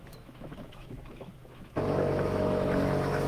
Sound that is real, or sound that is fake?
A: fake